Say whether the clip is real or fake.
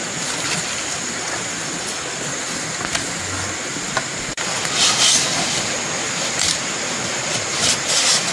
real